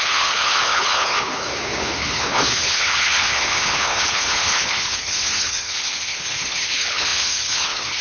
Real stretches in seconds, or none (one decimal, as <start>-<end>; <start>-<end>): none